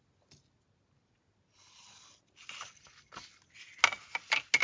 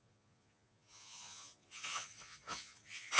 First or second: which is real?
first